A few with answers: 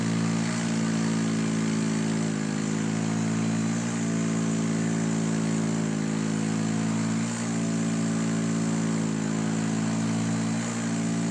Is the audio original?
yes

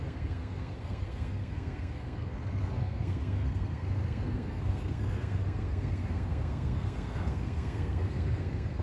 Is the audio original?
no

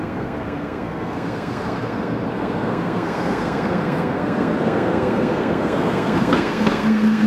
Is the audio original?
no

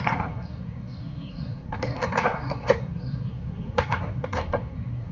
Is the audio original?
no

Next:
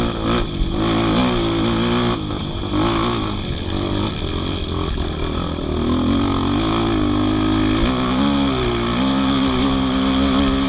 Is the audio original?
yes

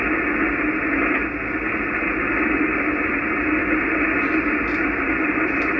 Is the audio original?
yes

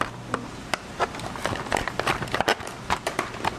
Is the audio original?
yes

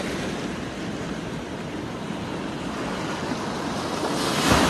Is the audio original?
yes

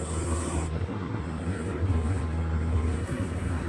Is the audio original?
no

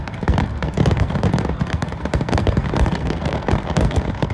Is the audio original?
no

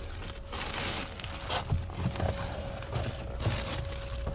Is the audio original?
yes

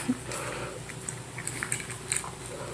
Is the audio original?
yes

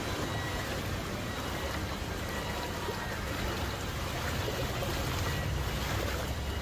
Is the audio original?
yes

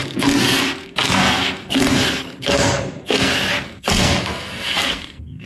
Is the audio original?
no